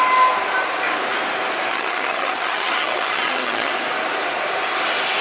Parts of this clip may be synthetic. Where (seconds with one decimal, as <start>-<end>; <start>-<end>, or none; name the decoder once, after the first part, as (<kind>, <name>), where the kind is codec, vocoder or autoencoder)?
1.7-3.7 (vocoder, HiFi-GAN)